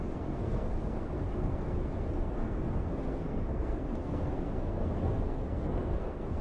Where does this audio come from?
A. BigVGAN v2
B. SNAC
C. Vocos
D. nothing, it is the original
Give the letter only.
B